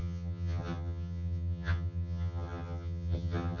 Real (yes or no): no